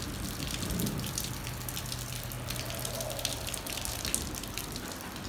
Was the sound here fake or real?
real